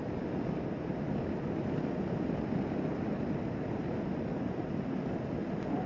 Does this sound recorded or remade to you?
recorded